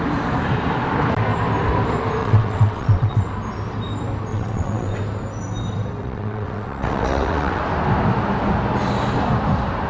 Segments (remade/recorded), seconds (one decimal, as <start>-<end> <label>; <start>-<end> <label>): 0.0-2.2 recorded; 2.2-3.3 remade; 3.3-4.3 recorded; 4.3-5.0 remade; 5.0-6.0 recorded; 6.0-7.6 remade; 7.6-9.9 recorded